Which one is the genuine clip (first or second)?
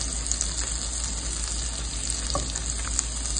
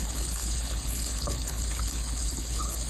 first